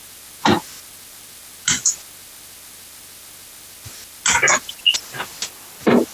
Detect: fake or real real